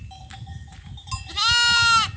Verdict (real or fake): real